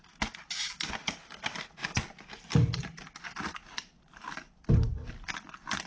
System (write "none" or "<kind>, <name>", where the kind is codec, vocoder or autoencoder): none